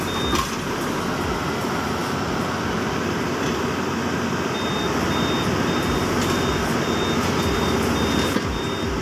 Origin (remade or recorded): recorded